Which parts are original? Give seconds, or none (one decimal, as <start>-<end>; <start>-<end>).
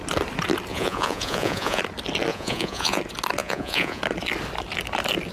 0.0-0.7; 1.8-2.3; 3.0-3.4; 4.0-5.3